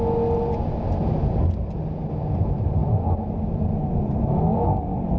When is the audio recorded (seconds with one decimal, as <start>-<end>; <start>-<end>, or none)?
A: 0.0-5.2